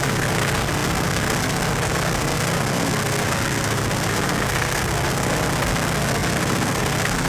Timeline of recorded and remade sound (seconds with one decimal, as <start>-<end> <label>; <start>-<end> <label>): 0.0-7.3 remade

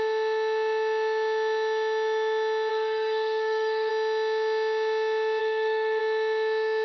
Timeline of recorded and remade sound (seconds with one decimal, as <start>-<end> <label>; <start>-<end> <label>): 0.0-2.7 recorded; 2.7-3.9 remade; 3.9-5.4 recorded; 5.4-6.0 remade; 6.0-6.8 recorded

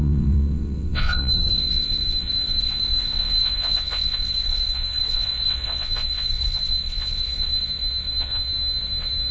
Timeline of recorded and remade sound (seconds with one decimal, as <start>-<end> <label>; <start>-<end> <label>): 0.0-9.3 remade

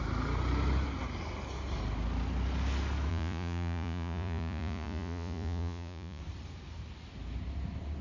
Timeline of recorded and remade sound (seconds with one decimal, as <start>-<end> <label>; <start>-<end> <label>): 0.0-3.1 recorded; 3.1-6.2 remade; 6.2-8.0 recorded

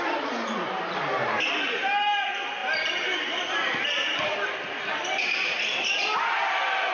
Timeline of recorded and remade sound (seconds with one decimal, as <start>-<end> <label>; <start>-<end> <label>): 0.0-6.9 recorded

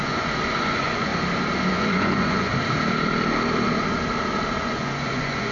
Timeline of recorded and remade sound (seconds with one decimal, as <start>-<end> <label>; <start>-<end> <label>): 0.0-1.1 remade; 1.1-1.7 recorded; 1.7-2.5 remade; 2.5-4.6 recorded; 4.6-5.5 remade

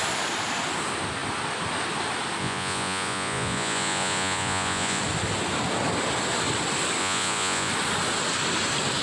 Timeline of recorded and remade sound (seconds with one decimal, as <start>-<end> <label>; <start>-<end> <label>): 0.0-2.4 recorded; 2.4-5.0 remade; 5.0-7.0 recorded; 7.0-7.7 remade; 7.7-9.0 recorded

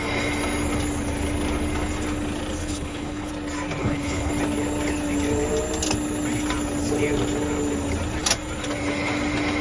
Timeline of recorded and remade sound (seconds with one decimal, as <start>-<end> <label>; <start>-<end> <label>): 0.0-2.6 recorded; 2.6-3.3 remade; 3.3-3.8 recorded; 3.8-4.3 remade; 4.3-9.6 recorded